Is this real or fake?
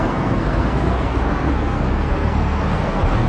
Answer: fake